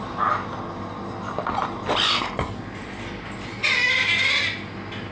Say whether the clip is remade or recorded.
recorded